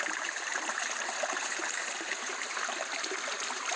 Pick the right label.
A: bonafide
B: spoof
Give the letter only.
B